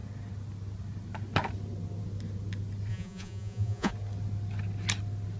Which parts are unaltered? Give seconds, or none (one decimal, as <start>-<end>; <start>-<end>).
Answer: 0.0-2.9; 3.9-5.4